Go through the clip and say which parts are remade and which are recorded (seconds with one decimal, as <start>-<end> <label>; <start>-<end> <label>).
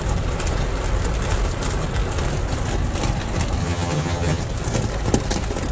0.0-3.6 recorded; 3.6-4.4 remade; 4.4-5.7 recorded